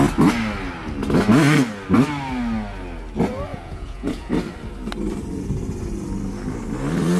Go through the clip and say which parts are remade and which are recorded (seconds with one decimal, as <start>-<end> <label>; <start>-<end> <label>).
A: 0.0-3.5 recorded; 3.5-4.3 remade; 4.3-7.2 recorded